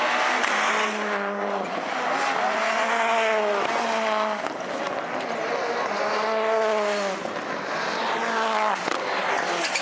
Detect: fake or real real